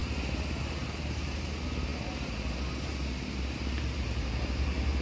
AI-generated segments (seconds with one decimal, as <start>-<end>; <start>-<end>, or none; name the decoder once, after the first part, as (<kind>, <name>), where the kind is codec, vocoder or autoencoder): none